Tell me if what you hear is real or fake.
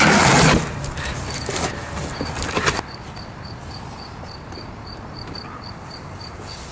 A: real